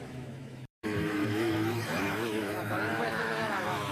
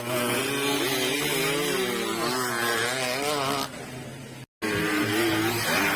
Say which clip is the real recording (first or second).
second